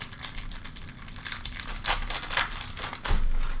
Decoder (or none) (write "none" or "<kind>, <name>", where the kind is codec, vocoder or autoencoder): none